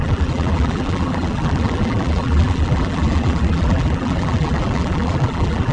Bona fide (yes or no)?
no